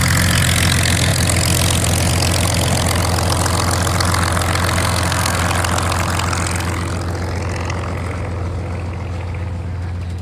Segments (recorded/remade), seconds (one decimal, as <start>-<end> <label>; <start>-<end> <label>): 0.0-4.8 recorded; 4.8-5.4 remade; 5.4-10.2 recorded